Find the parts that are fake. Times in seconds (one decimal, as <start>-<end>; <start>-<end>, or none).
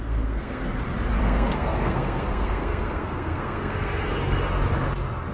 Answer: 0.0-0.6; 1.2-4.0